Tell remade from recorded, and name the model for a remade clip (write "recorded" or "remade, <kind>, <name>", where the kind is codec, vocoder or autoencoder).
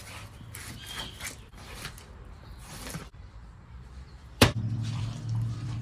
remade, vocoder, BigVGAN v2